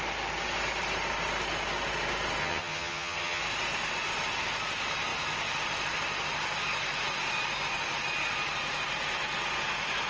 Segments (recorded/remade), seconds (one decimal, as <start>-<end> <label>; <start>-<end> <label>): 0.0-2.4 recorded; 2.4-3.4 remade; 3.4-10.1 recorded